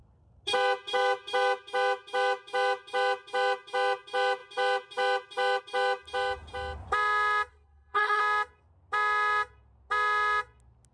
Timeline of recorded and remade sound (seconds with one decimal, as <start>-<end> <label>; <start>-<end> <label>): 0.0-7.5 recorded; 7.5-8.2 remade; 8.2-10.9 recorded